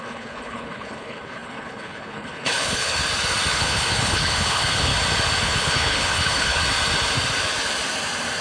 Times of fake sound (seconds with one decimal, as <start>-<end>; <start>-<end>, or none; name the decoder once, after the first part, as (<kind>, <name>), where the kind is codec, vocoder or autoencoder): 0.0-3.0 (codec, HILCodec); 3.5-4.9; 5.4-6.6